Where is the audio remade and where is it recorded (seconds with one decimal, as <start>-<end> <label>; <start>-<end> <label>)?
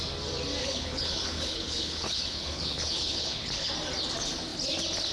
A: 0.0-0.6 recorded; 0.6-3.7 remade; 3.7-5.1 recorded